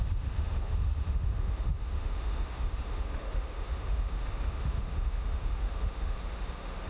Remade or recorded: remade